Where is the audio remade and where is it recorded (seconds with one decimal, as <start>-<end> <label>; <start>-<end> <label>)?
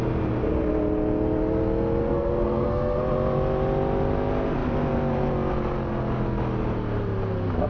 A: 0.0-2.0 recorded; 2.0-3.0 remade; 3.0-7.7 recorded